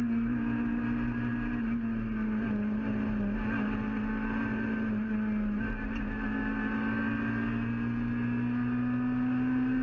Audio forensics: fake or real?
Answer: real